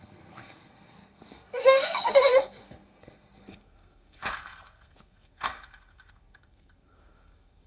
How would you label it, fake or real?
fake